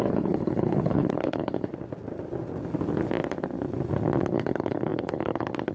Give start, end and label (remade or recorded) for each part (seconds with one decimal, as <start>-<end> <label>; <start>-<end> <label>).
0.0-1.7 remade; 1.7-4.2 recorded; 4.2-5.7 remade